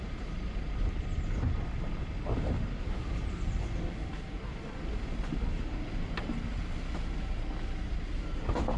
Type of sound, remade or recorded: recorded